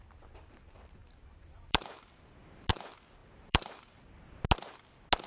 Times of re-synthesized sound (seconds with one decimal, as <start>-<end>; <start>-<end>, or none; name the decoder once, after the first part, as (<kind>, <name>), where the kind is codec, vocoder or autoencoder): 1.0-2.7 (vocoder, BigVGAN v2); 3.2-4.1